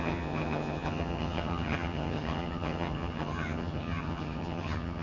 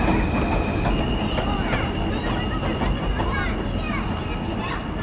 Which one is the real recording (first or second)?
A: second